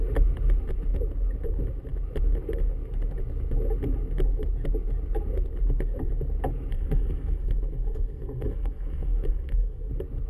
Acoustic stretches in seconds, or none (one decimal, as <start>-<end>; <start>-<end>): 0.0-6.7; 9.9-10.3